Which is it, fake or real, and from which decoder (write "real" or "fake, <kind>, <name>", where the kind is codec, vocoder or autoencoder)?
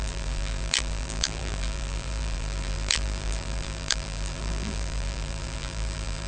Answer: fake, vocoder, BigVGAN v2